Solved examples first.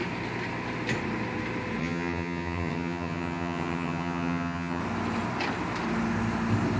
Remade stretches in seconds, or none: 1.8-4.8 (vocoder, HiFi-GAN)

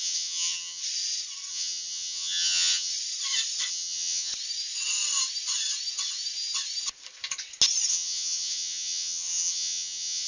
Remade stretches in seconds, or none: 0.0-0.8 (vocoder, HiFi-GAN); 1.5-2.9; 3.7-4.3; 7.9-10.3

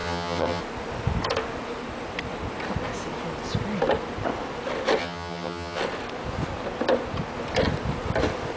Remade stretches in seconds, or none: 0.0-0.6 (vocoder, HiFi-GAN); 5.0-5.8

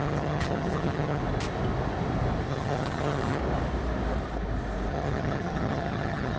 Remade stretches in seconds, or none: 0.0-1.2 (vocoder, HiFi-GAN); 2.5-3.4; 4.9-6.4

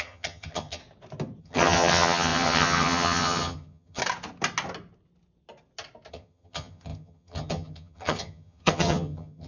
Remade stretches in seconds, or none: 0.0-0.8 (vocoder, HiFi-GAN); 1.4-4.0; 6.1-9.5

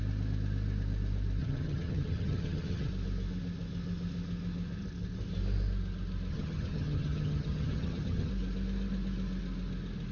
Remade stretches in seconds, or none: 1.4-2.9 (vocoder, HiFi-GAN); 6.3-8.3

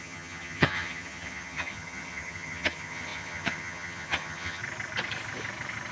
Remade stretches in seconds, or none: 0.0-4.6 (vocoder, HiFi-GAN)